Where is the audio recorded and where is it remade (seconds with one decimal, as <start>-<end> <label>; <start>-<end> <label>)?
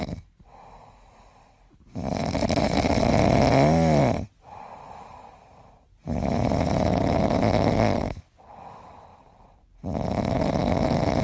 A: 0.0-4.0 recorded; 4.0-7.4 remade; 7.4-11.2 recorded